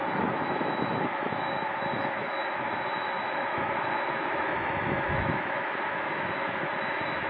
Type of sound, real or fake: fake